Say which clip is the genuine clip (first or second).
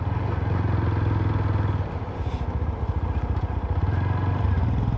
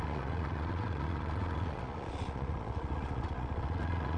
first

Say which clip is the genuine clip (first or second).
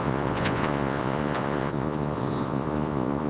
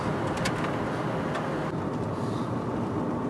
second